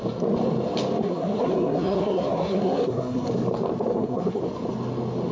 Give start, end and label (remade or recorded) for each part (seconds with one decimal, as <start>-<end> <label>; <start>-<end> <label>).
0.0-1.0 recorded; 1.0-3.3 remade; 3.3-3.9 recorded; 3.9-4.4 remade; 4.4-5.3 recorded